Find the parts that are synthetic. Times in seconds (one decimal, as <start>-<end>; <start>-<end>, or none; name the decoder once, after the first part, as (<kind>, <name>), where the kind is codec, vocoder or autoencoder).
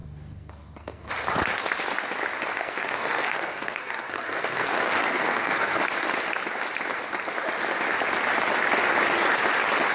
0.0-1.1 (codec, SNAC); 2.5-5.8